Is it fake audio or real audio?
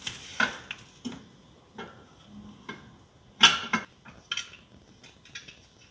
real